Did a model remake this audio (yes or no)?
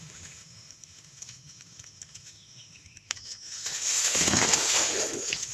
yes